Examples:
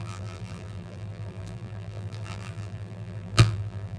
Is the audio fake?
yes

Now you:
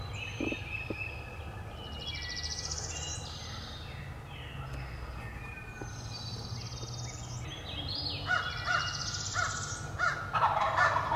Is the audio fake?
no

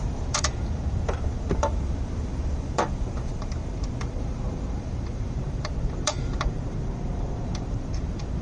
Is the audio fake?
yes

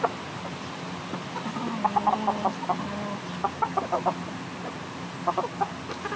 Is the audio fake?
no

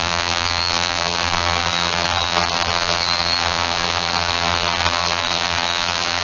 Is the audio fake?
yes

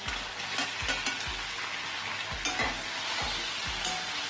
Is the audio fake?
no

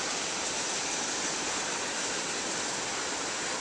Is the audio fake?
yes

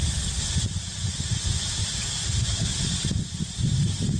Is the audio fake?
no